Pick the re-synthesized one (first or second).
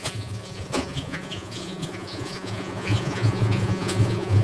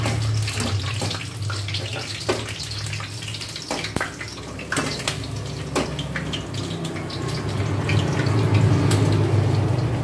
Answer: first